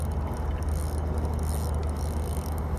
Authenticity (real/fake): real